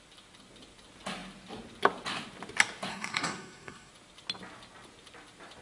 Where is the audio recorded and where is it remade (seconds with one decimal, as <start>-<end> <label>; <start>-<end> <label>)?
0.0-2.9 recorded; 2.9-3.9 remade; 3.9-5.6 recorded